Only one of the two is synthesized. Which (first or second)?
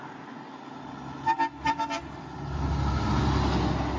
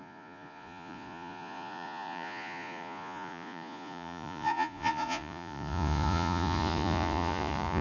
second